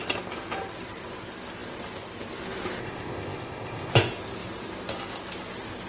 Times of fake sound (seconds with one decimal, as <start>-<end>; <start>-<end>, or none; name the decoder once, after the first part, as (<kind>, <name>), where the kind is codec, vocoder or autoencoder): 2.8-3.9 (codec, ZipCodec)